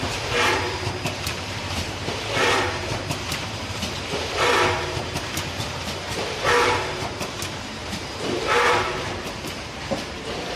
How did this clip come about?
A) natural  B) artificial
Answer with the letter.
B